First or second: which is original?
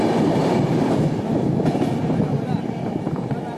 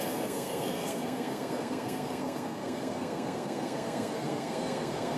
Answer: first